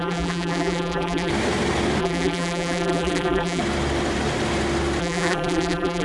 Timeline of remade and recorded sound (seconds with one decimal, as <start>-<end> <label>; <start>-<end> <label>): 0.0-1.3 remade; 1.3-2.0 recorded; 2.0-3.6 remade; 3.6-5.0 recorded; 5.0-6.0 remade